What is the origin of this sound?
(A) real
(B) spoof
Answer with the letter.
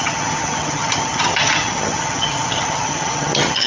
B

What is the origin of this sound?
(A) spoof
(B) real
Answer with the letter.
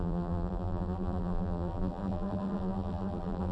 A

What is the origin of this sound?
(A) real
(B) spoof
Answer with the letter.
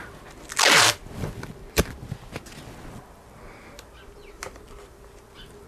A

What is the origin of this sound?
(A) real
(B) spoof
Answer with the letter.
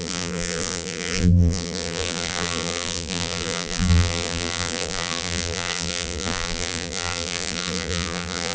B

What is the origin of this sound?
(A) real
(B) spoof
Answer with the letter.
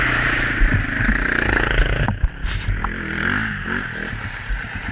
A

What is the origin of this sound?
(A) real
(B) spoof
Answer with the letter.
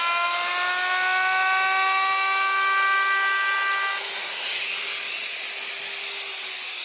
A